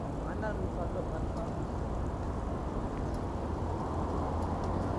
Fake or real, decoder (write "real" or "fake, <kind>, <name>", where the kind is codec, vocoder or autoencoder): real